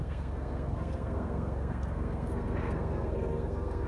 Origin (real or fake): fake